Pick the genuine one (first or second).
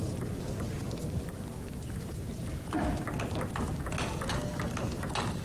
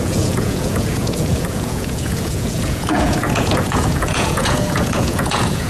first